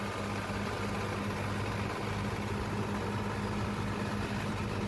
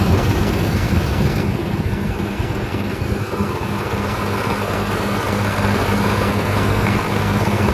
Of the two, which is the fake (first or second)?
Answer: second